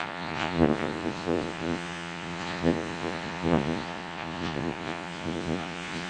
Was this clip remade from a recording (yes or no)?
yes